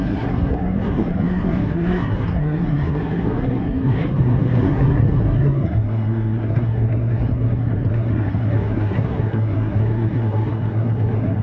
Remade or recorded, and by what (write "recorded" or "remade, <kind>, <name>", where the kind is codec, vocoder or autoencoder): remade, codec, SNAC